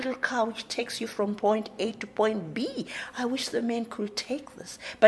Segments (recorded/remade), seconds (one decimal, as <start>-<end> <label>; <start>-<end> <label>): 0.0-1.9 remade; 1.9-3.6 recorded; 3.6-5.1 remade